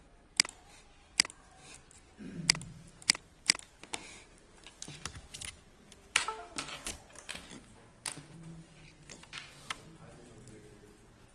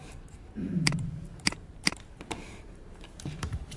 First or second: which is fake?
second